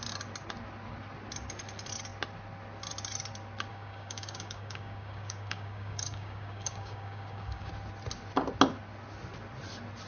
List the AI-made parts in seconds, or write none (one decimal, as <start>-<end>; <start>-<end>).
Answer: 3.7-7.7